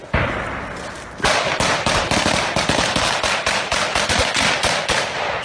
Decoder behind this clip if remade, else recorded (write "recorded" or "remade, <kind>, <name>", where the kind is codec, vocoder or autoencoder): recorded